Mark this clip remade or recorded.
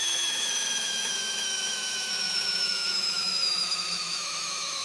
remade